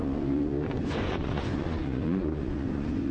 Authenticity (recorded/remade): remade